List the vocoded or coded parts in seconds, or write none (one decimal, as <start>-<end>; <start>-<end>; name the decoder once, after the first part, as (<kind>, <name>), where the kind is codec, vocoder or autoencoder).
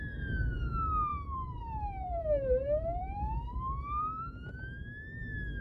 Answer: 1.1-4.5 (vocoder, BigVGAN v2)